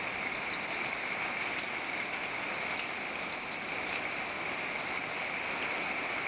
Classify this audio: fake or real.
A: real